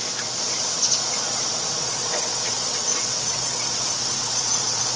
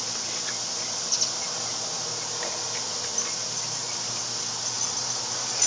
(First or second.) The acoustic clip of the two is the second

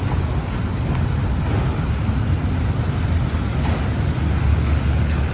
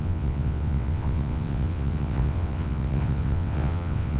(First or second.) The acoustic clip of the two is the first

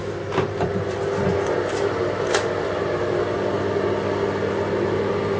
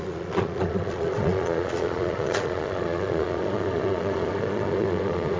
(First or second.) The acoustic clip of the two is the first